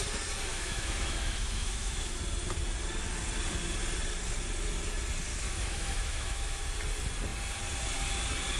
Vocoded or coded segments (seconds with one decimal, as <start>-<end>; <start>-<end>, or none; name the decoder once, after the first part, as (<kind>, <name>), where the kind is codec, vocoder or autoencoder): 0.5-2.2 (autoencoder, DAC-VAE); 5.3-6.6